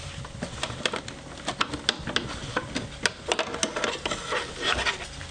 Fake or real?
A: real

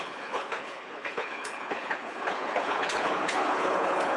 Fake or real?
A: fake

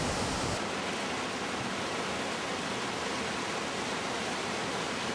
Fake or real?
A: real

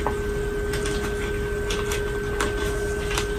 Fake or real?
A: real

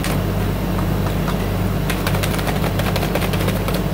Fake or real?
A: real